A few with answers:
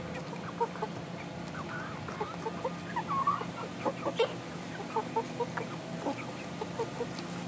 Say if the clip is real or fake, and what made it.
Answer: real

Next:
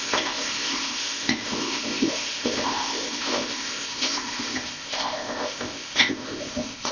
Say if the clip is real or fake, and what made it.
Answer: fake, codec, ZipCodec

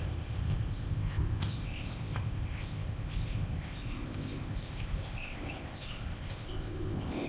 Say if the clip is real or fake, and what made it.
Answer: fake, codec, ZipCodec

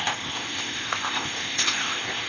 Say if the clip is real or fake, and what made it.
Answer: fake, codec, ZipCodec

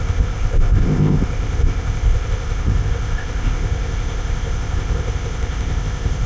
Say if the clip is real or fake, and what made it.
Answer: fake, codec, ZipCodec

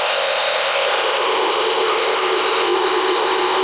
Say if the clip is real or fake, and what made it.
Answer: fake, codec, ZipCodec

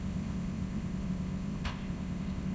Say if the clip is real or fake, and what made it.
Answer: fake, codec, ZipCodec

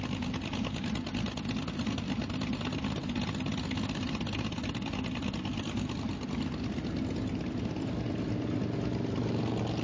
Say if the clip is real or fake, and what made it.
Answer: real